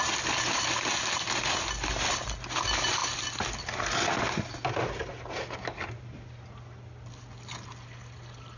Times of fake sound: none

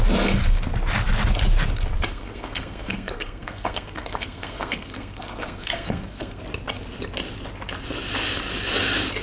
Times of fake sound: 2.1-6.4 (codec, SNAC)